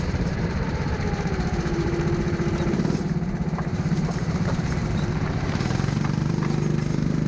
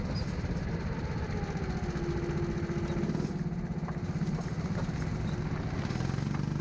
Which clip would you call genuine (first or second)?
second